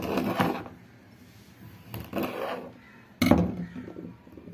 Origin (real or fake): real